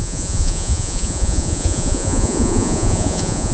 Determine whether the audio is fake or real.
fake